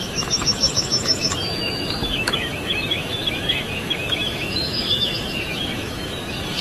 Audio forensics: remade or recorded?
remade